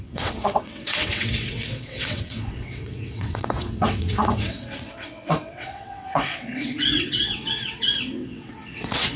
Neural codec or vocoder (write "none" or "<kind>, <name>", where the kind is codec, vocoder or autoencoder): vocoder, WaveNeXt